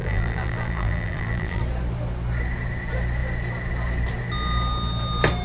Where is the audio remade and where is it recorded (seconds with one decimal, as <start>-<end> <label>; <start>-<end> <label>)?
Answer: 0.0-1.6 remade; 1.6-5.4 recorded